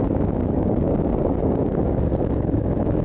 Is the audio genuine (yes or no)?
no